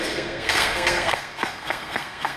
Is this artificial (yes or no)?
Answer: yes